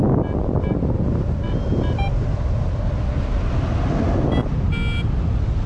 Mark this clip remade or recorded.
recorded